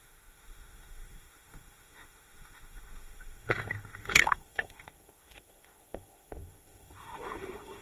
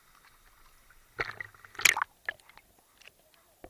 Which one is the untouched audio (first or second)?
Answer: second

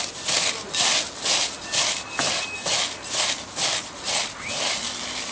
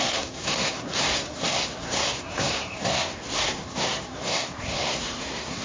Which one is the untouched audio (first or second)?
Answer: first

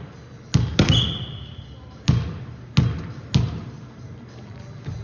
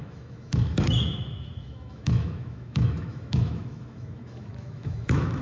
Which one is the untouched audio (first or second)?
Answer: first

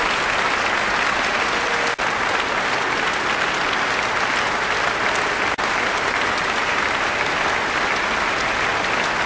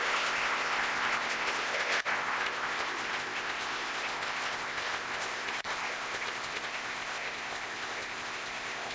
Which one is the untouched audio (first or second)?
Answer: first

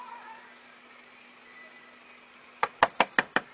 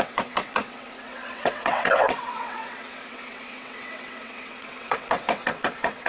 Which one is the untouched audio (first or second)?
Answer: first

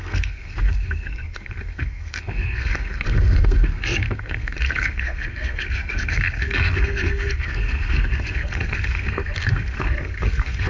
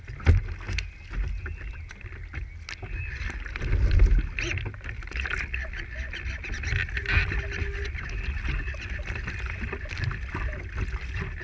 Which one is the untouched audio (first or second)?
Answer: second